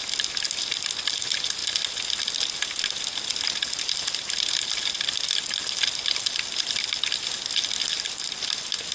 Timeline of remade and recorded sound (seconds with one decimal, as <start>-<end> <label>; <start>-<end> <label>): 0.0-8.9 recorded